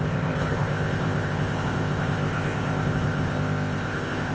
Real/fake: fake